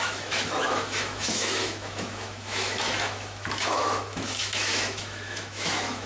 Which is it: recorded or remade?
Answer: remade